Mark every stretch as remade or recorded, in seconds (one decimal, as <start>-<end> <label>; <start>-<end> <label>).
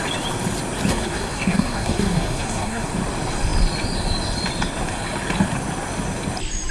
0.0-0.9 recorded; 0.9-2.9 remade; 2.9-6.7 recorded